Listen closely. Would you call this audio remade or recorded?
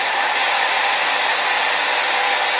recorded